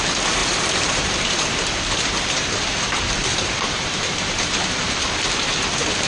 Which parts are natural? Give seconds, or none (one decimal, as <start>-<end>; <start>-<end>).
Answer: 0.0-0.4; 2.6-3.3; 5.1-6.1